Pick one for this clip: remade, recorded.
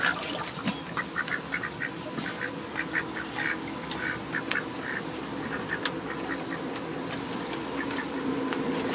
recorded